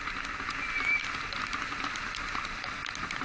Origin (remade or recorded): recorded